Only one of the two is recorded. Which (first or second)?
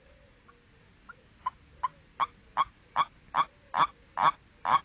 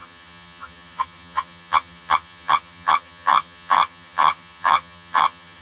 first